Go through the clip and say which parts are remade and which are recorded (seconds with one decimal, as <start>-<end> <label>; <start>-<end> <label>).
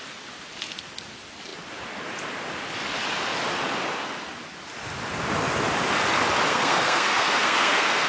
0.0-6.5 recorded; 6.5-8.1 remade